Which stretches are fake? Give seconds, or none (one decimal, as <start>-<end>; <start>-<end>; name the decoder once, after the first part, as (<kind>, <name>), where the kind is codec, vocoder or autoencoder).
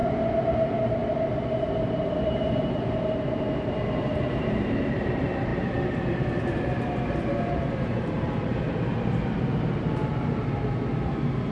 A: 0.6-1.0 (vocoder, BigVGAN v2); 1.7-11.5